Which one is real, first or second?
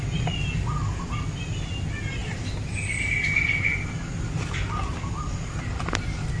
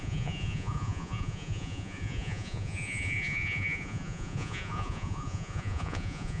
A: first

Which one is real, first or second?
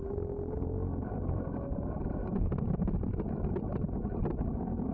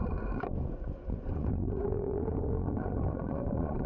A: first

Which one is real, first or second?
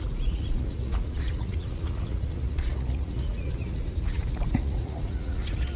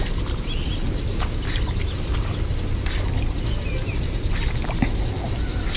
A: second